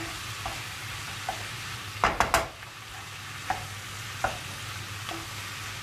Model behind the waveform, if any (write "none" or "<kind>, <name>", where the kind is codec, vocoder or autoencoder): none